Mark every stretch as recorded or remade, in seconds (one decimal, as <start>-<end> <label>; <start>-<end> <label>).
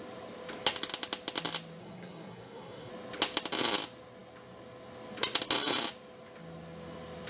0.0-1.8 recorded; 1.8-2.9 remade; 2.9-7.3 recorded